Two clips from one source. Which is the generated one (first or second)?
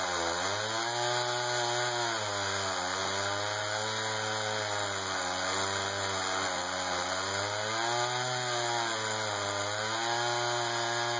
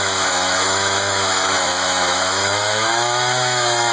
second